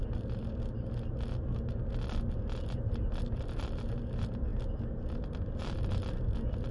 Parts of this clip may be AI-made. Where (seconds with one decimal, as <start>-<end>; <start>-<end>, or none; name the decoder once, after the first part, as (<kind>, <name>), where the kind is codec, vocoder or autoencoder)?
none